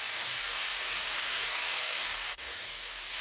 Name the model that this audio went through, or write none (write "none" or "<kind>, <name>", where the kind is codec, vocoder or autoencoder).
codec, DAC